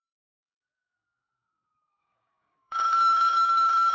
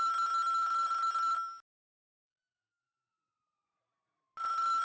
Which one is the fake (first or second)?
first